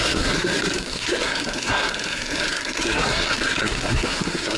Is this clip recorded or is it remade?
remade